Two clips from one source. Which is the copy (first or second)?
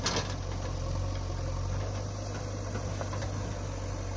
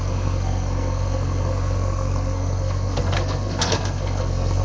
second